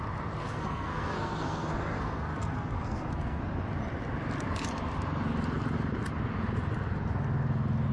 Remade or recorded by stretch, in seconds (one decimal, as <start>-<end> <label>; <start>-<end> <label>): 0.0-0.4 recorded; 0.4-3.4 remade; 3.4-7.9 recorded